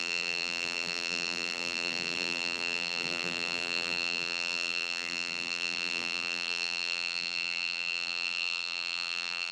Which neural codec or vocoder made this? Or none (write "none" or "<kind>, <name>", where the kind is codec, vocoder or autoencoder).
vocoder, BigVGAN v2